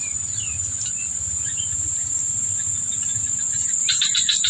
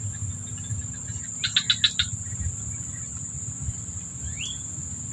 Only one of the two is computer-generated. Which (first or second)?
first